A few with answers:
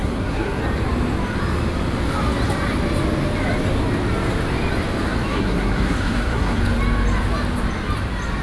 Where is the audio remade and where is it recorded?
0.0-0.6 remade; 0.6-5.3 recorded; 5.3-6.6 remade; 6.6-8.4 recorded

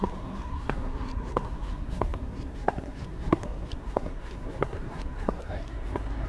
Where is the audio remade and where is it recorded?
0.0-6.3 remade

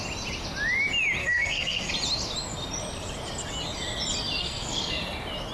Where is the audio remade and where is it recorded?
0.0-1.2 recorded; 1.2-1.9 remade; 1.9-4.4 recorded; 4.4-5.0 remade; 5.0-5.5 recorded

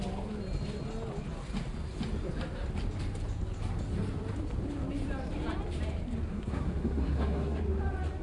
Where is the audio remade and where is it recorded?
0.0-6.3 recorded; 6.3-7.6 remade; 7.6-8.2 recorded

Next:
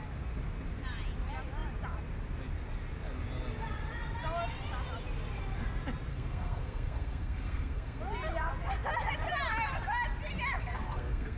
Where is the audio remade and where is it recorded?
0.0-6.1 recorded; 6.1-8.0 remade; 8.0-10.6 recorded; 10.6-11.4 remade

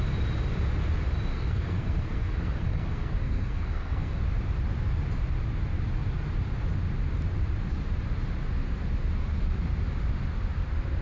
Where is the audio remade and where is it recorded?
0.0-1.3 recorded; 1.3-4.2 remade; 4.2-11.0 recorded